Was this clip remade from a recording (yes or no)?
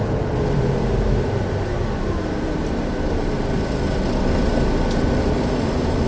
no